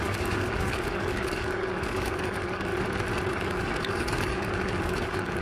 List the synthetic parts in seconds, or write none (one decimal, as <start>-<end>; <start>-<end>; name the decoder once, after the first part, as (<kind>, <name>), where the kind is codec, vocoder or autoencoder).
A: 0.0-2.7 (codec, DAC); 3.3-5.4